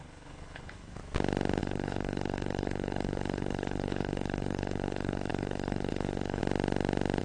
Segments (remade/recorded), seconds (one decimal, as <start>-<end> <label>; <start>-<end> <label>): 0.0-1.0 remade; 1.0-1.6 recorded; 1.6-6.4 remade; 6.4-7.2 recorded